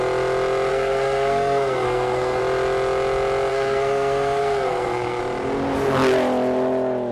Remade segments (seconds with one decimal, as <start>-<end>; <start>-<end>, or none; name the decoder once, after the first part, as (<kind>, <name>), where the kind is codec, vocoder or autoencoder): 0.7-2.4 (codec, SNAC); 3.5-5.2